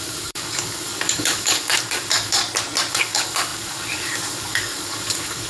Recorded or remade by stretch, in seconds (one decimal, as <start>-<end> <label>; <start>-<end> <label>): 0.0-2.4 remade; 2.4-2.9 recorded; 2.9-5.5 remade